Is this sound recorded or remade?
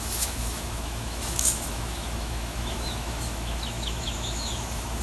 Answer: remade